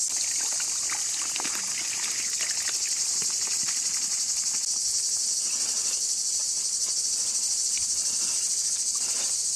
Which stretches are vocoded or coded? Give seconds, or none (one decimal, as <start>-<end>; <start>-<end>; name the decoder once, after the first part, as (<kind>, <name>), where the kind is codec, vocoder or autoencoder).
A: none